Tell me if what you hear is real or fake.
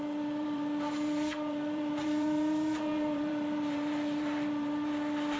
fake